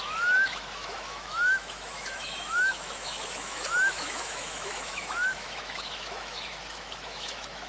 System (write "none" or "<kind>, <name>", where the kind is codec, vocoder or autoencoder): autoencoder, DAC-VAE